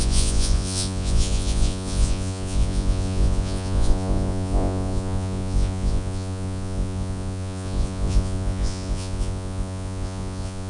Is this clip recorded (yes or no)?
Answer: no